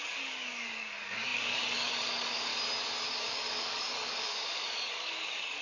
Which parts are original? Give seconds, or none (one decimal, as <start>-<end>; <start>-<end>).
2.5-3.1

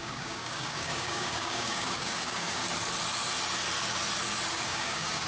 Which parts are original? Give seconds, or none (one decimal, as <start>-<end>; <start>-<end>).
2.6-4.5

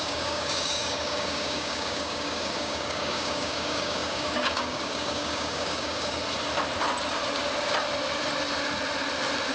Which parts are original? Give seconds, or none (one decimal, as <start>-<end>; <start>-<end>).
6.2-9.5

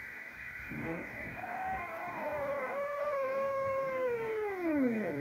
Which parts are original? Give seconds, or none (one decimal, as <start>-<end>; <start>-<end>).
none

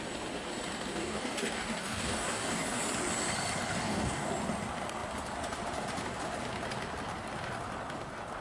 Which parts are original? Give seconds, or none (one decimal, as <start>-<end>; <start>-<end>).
0.0-1.0; 2.8-3.7; 4.3-8.4

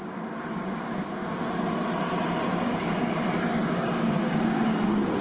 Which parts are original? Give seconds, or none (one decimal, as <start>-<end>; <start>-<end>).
0.0-0.5; 1.2-2.6